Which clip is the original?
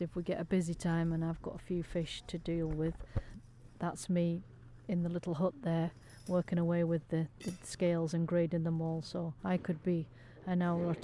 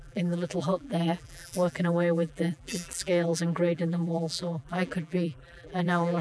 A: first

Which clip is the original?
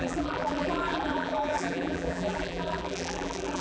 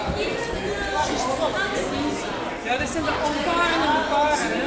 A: second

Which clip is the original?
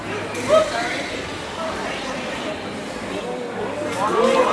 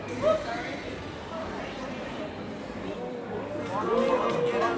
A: second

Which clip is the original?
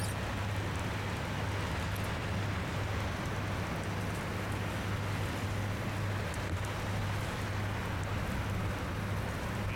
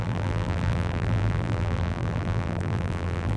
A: first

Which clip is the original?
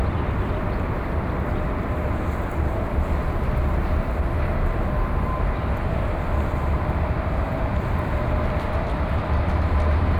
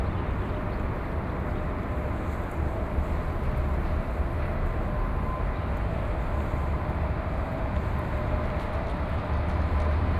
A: second